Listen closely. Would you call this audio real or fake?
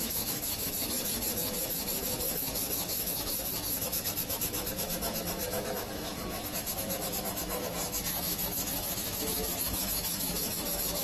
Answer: fake